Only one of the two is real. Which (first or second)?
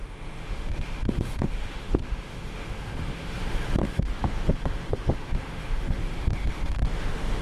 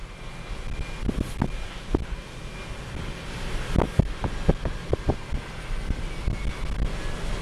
second